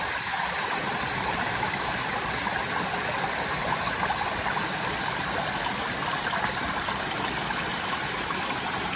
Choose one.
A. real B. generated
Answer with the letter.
A